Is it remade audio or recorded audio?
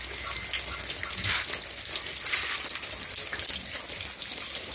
recorded